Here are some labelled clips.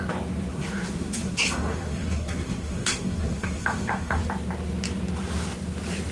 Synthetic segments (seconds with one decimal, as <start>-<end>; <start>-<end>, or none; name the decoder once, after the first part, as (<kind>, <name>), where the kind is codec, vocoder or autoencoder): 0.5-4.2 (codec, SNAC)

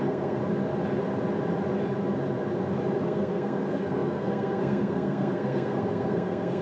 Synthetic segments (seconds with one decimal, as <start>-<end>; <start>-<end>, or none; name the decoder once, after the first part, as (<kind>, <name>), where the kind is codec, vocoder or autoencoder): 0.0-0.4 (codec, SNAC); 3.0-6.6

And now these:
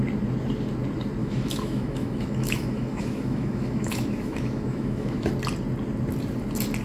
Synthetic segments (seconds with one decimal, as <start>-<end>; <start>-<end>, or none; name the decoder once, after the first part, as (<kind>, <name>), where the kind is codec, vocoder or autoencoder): 1.2-5.3 (autoencoder, DAC-VAE)

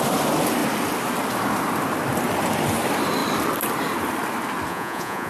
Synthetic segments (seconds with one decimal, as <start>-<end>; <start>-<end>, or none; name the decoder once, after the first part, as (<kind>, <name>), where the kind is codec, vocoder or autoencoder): 4.7-5.3 (vocoder, Vocos)